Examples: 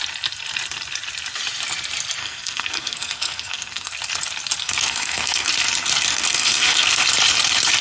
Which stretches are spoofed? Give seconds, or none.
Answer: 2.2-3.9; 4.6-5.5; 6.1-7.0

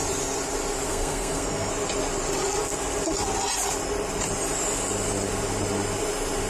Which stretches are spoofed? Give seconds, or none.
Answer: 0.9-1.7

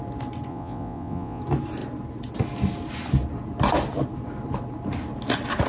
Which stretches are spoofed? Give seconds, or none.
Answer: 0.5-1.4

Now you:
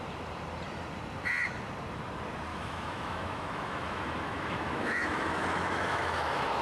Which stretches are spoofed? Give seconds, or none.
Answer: 2.5-6.6